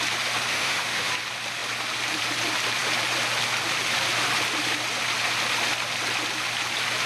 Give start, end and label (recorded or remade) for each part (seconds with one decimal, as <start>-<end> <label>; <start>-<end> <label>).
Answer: 0.0-0.5 recorded; 0.5-1.1 remade; 1.1-7.1 recorded